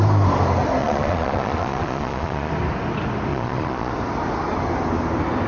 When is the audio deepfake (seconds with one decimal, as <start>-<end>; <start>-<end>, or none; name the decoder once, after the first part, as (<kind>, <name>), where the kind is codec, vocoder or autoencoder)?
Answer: 0.8-2.5 (vocoder, Vocos); 3.3-3.9

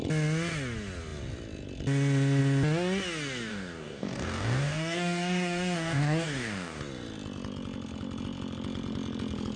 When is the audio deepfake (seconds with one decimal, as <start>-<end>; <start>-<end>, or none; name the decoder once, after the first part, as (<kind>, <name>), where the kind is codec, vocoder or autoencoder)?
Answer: 3.5-6.8 (codec, DAC)

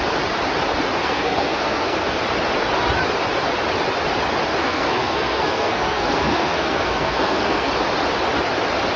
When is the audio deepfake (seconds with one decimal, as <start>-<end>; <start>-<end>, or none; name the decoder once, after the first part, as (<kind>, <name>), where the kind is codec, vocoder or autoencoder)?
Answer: 1.0-2.2 (codec, SNAC); 4.6-7.7